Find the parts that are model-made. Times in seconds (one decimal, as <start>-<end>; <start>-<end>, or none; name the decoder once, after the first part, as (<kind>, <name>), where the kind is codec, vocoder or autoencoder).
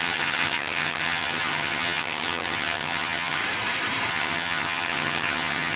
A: 0.0-3.4 (vocoder, HiFi-GAN); 4.1-5.8